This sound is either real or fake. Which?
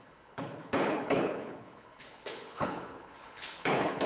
fake